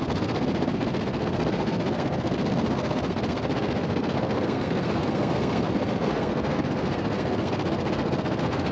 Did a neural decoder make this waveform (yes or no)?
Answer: yes